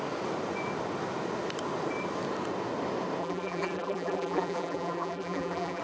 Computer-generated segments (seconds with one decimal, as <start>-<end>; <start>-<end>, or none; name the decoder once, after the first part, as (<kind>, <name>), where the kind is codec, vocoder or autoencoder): 3.2-5.8 (vocoder, BigVGAN v2)